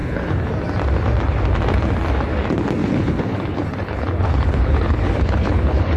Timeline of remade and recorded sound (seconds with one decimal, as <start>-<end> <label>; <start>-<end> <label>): 0.0-0.5 remade; 0.5-2.8 recorded; 2.8-6.0 remade